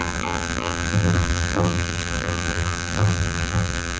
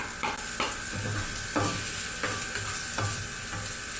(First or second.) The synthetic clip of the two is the first